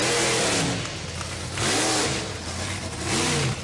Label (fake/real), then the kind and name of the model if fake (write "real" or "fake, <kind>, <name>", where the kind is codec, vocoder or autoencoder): real